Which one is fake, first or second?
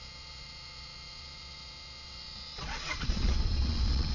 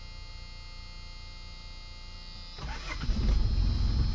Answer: first